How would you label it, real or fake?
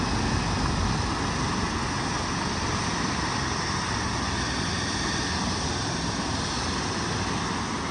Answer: real